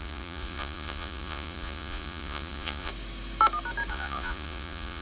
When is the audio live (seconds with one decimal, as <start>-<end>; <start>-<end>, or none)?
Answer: 2.9-3.9